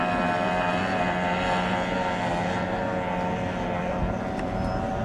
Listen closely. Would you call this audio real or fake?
real